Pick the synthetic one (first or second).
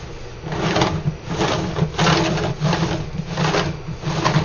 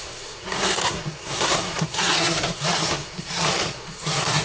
second